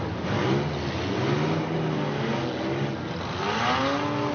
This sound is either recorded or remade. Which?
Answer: recorded